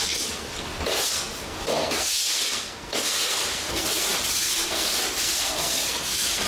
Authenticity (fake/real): fake